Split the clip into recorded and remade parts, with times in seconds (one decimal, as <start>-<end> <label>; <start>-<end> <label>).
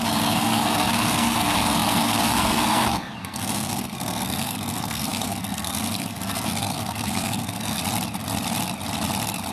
0.0-7.8 remade; 7.8-9.5 recorded